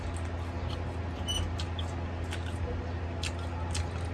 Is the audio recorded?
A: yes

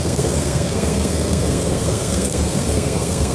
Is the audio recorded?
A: no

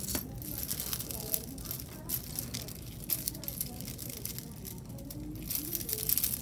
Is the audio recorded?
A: yes